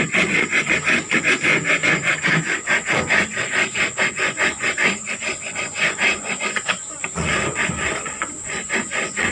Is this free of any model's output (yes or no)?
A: no